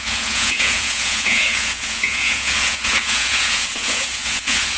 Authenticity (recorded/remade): remade